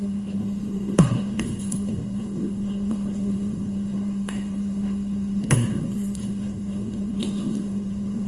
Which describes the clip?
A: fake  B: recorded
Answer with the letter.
A